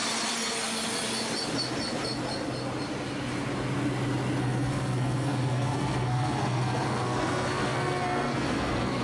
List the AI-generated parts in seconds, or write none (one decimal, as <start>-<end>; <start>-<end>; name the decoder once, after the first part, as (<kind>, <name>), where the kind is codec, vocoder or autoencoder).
4.4-9.0 (codec, SNAC)